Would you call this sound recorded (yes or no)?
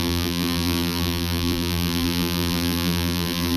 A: no